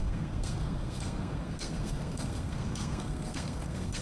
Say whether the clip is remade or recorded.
remade